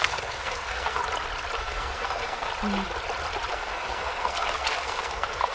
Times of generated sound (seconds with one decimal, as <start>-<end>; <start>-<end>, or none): 0.0-1.0; 1.6-2.5; 3.5-5.5